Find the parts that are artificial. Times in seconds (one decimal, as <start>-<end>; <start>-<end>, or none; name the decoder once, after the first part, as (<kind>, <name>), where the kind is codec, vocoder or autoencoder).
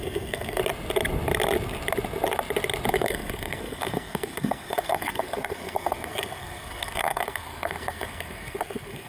0.0-0.6 (codec, SNAC); 2.9-9.1